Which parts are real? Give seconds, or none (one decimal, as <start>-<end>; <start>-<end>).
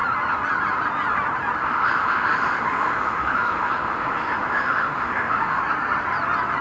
0.0-1.6; 5.6-6.6